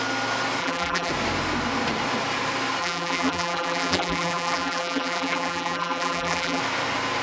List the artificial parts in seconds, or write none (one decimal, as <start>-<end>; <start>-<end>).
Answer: 0.6-1.1; 2.8-6.6